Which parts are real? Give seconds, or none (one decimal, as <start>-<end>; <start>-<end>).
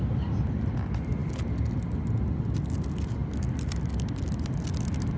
0.0-3.2; 4.6-5.2